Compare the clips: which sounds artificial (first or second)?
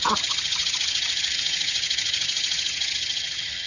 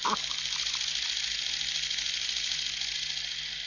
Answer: first